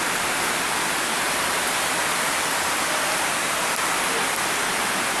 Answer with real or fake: real